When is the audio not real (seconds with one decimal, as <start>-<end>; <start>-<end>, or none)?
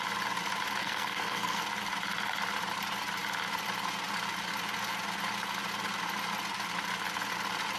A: 0.8-1.6